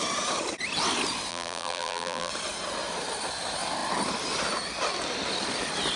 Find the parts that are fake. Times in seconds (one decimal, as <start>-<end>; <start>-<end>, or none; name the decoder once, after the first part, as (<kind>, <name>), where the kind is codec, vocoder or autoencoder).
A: 1.3-2.3 (vocoder, BigVGAN v2)